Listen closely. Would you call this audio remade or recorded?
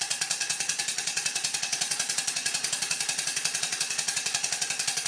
remade